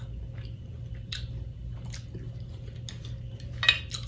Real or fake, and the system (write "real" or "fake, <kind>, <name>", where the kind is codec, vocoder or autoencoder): real